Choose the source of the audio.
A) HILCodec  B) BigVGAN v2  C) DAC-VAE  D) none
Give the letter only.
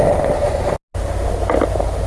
D